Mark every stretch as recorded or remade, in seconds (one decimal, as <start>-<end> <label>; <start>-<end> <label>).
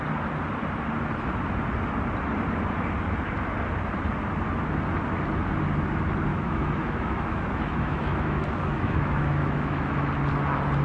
0.0-6.3 recorded; 6.3-10.1 remade; 10.1-10.8 recorded